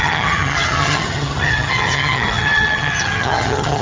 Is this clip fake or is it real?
fake